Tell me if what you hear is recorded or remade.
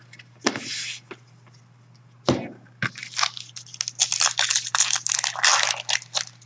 recorded